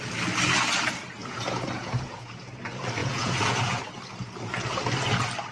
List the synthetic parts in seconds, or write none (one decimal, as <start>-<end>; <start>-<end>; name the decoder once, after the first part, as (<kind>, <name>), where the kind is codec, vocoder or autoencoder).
1.2-2.5 (vocoder, Vocos); 3.0-3.8